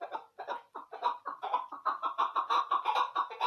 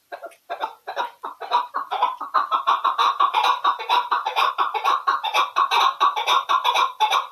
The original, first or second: first